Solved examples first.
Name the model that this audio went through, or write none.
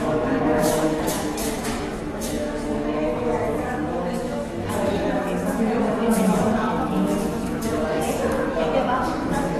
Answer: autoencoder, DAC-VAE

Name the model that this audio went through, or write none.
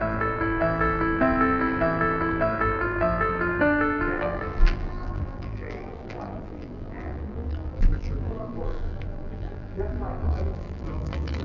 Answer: vocoder, BigVGAN v2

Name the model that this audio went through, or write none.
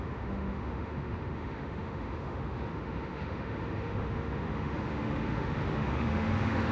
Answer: autoencoder, DAC-VAE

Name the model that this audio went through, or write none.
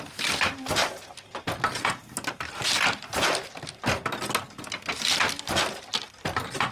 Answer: none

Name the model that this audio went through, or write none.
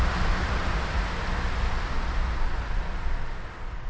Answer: none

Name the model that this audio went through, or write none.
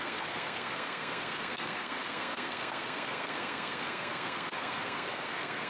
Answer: codec, SNAC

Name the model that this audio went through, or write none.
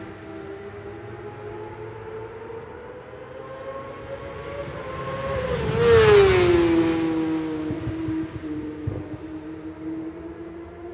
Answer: none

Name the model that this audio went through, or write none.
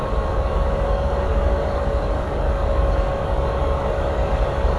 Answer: codec, DAC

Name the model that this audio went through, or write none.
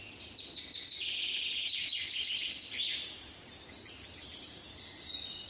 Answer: none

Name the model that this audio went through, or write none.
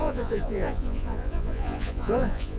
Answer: vocoder, Vocos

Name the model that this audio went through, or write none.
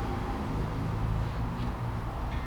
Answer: none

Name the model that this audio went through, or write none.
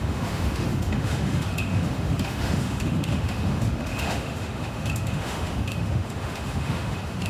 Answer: autoencoder, DAC-VAE